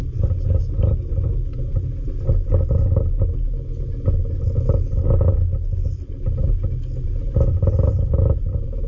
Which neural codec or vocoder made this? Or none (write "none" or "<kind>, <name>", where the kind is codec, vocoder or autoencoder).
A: none